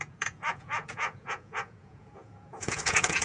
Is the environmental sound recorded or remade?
remade